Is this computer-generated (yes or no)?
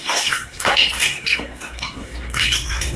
yes